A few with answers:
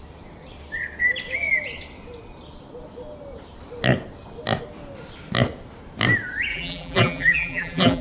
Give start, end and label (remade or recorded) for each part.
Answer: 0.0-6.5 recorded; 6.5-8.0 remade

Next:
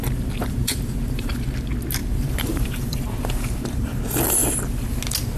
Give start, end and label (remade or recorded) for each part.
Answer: 0.0-0.4 recorded; 0.4-1.3 remade; 1.3-2.0 recorded; 2.0-4.0 remade; 4.0-5.4 recorded

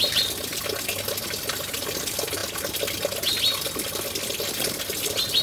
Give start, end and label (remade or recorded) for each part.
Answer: 0.0-5.4 recorded